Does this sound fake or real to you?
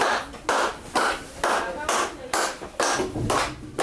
real